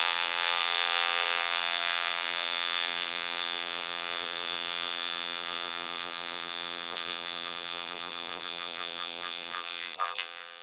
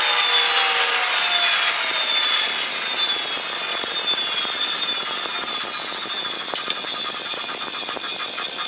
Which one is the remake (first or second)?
first